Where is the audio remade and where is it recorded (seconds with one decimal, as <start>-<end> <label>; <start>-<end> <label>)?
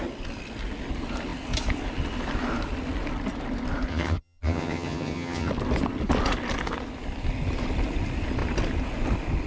0.0-3.9 recorded; 3.9-5.5 remade; 5.5-9.5 recorded